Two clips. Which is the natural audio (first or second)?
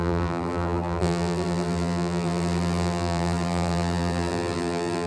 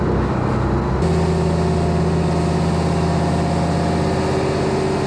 second